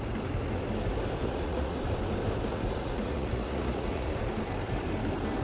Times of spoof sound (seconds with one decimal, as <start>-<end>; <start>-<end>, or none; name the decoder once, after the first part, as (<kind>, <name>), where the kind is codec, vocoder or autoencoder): 1.2-1.8 (vocoder, Vocos); 2.5-4.1